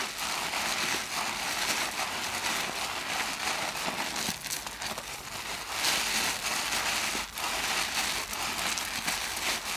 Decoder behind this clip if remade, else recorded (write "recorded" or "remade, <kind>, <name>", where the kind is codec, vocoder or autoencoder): recorded